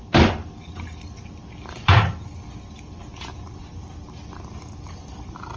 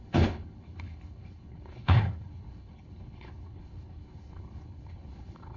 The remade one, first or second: second